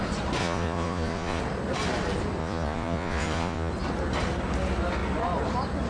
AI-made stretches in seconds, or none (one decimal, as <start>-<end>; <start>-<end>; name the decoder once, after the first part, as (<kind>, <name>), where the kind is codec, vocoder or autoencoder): 0.4-1.4 (vocoder, Vocos); 2.4-3.7